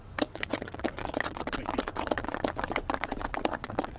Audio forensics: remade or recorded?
remade